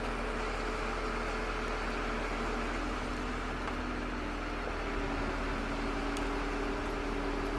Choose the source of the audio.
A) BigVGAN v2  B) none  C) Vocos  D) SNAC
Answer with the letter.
B